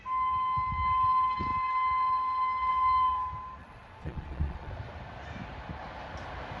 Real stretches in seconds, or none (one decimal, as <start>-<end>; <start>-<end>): 0.0-3.6; 4.7-6.6